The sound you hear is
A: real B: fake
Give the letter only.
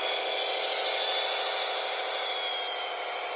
A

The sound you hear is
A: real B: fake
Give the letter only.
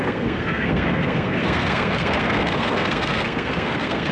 B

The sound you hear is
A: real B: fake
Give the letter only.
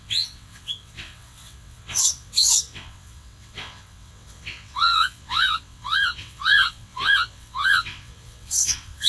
B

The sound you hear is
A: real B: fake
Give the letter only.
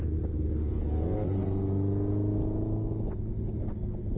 A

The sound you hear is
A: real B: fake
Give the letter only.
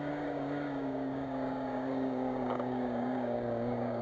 B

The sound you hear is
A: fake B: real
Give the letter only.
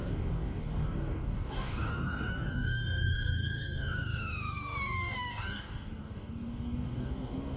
A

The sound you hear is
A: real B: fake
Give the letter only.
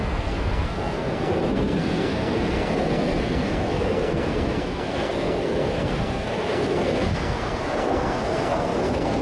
B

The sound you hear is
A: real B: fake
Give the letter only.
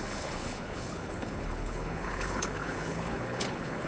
B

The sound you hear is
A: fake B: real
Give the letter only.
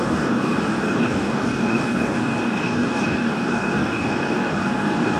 A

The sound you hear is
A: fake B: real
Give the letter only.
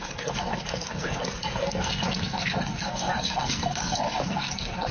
A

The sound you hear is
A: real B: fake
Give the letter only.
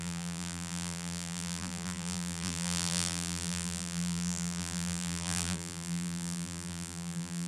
B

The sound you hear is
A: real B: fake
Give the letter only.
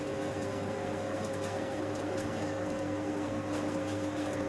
B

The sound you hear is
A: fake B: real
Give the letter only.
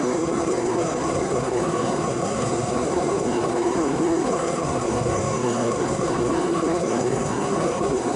A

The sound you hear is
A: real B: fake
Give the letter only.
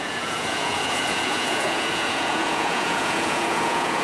B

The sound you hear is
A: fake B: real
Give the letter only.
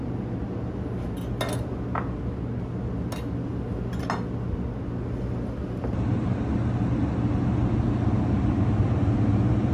B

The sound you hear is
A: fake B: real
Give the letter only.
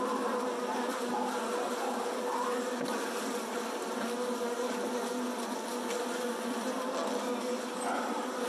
B